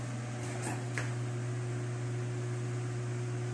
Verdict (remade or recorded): recorded